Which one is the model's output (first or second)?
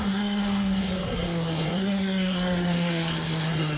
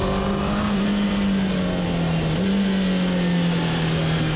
first